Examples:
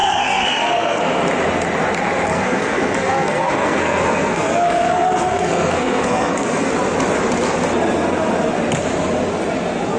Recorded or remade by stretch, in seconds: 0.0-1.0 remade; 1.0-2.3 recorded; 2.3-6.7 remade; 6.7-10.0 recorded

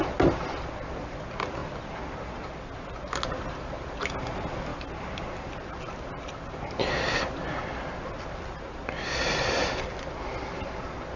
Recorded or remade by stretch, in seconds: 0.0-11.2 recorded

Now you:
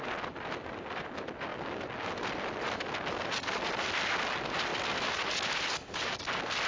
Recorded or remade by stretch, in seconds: 0.0-6.7 recorded